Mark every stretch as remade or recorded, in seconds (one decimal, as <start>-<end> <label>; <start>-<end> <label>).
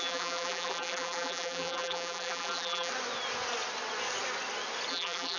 0.0-2.9 remade; 2.9-4.9 recorded; 4.9-5.4 remade